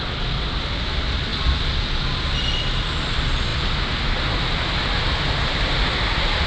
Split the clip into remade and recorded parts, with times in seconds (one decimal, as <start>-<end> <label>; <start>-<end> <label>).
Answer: 0.0-6.5 recorded